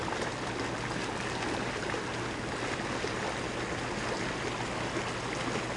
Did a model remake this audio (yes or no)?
no